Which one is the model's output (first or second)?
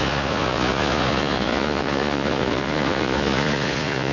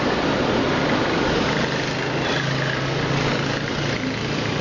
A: first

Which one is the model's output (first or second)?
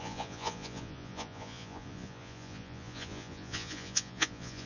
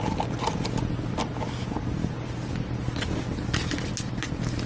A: first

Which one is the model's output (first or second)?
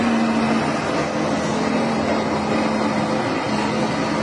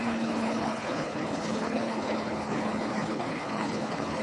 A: second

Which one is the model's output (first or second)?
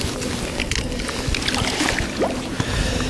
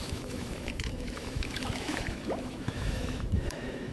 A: second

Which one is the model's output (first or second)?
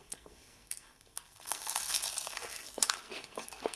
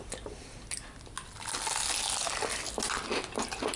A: first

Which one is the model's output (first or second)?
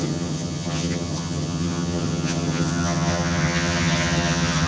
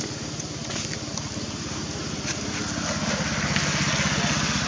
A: first